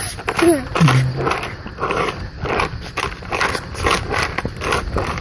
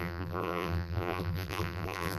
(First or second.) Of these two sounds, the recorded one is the first